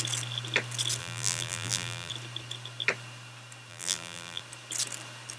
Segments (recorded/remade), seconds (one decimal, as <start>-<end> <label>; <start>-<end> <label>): 0.0-1.0 recorded; 1.0-2.1 remade; 2.1-3.7 recorded; 3.7-4.4 remade; 4.4-5.4 recorded